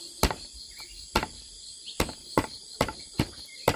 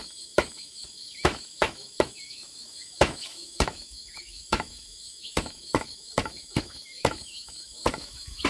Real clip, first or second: first